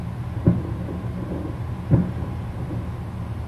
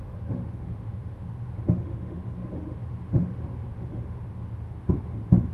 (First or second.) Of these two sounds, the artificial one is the second